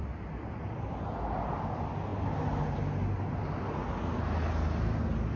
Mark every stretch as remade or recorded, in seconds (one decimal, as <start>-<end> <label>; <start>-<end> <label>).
0.0-5.4 recorded